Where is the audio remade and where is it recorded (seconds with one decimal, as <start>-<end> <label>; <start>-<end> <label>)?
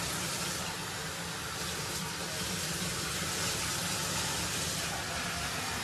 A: 0.0-5.8 recorded